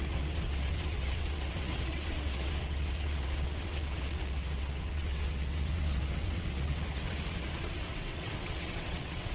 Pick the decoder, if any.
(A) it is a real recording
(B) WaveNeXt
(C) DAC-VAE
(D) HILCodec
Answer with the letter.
B